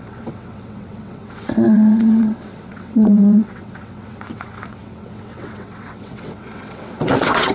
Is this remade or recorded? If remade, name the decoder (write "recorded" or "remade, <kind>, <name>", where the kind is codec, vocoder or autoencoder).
remade, vocoder, WaveNeXt